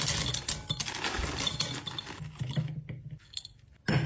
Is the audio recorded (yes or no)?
yes